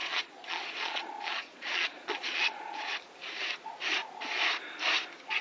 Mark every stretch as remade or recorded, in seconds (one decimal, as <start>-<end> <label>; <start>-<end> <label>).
0.0-2.8 remade; 2.8-5.4 recorded